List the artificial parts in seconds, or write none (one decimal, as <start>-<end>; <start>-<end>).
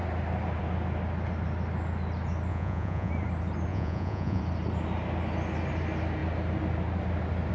2.5-3.1; 3.7-4.4